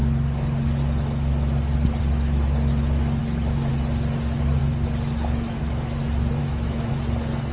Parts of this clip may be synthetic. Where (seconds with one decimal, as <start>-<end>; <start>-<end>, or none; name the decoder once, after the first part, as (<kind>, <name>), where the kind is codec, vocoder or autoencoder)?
3.2-3.7 (autoencoder, DAC-VAE); 6.4-6.9